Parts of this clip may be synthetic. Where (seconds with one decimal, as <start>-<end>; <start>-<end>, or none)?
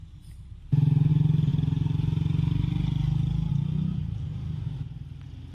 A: none